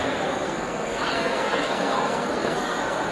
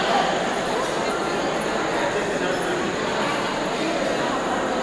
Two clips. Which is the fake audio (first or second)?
first